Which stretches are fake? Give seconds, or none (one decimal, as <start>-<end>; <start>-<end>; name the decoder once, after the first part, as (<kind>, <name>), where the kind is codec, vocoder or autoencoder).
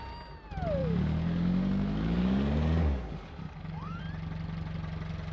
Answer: 0.8-4.0 (codec, DAC)